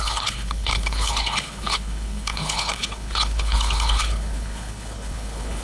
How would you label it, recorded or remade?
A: remade